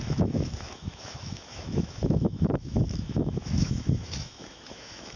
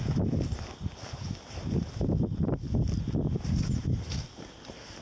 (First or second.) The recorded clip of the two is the second